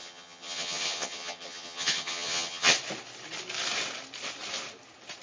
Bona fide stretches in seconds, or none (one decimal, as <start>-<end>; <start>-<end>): 2.7-5.2